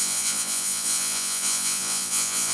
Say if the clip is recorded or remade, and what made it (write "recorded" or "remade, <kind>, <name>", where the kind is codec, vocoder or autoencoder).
remade, vocoder, Vocos